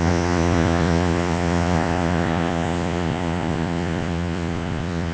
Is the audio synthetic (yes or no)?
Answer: yes